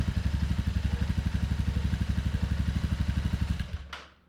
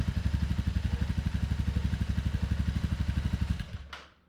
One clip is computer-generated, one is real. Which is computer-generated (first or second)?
second